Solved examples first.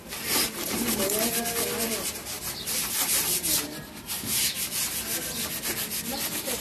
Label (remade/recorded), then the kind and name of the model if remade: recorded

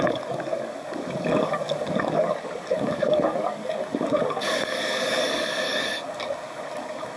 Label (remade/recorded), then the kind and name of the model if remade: remade, codec, DAC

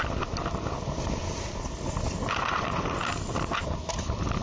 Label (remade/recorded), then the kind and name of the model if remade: remade, vocoder, BigVGAN v2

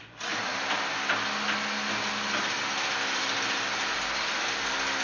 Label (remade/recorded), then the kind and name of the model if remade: recorded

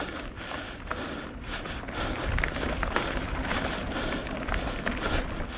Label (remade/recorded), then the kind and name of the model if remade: remade, vocoder, BigVGAN v2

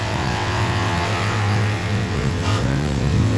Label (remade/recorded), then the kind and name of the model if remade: remade, vocoder, WaveNeXt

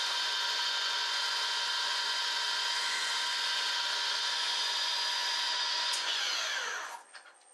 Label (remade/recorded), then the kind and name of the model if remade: remade, vocoder, Vocos